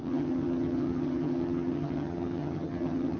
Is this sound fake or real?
fake